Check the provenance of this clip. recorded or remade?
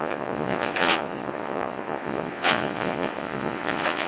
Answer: remade